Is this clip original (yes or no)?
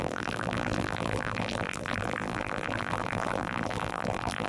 no